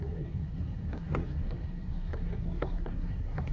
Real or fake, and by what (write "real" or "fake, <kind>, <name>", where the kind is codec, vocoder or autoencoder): fake, codec, SNAC